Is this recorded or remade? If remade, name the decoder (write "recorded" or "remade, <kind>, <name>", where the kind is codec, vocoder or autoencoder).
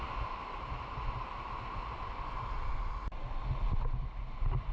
recorded